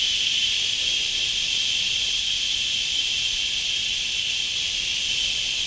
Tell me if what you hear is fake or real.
real